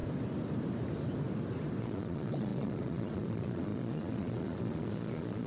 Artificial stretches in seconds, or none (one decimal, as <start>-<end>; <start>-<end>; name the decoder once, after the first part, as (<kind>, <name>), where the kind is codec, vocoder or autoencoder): 1.8-5.5 (vocoder, Vocos)